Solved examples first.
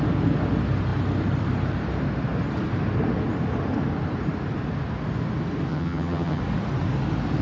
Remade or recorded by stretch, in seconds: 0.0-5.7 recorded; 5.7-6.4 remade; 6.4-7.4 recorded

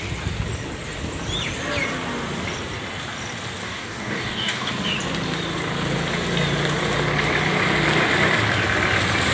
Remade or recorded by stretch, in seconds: 0.0-3.6 recorded; 3.6-4.7 remade; 4.7-9.3 recorded

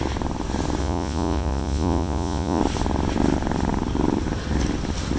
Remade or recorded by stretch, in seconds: 0.0-0.8 recorded; 0.8-2.6 remade; 2.6-5.2 recorded

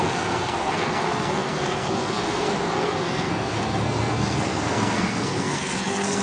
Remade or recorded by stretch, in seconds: 0.0-6.2 remade